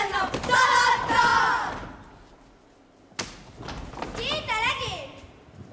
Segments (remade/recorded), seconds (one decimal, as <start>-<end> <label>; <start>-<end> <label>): 0.0-1.3 remade; 1.3-4.7 recorded; 4.7-5.7 remade